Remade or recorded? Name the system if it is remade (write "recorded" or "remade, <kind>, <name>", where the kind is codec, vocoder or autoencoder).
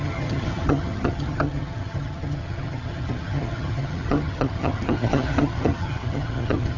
remade, vocoder, HiFi-GAN